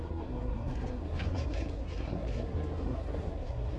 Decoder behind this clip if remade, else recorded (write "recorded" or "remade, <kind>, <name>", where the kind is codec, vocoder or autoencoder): remade, codec, SNAC